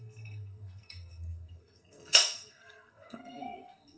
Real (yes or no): no